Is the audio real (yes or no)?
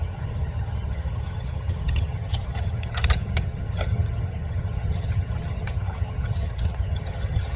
no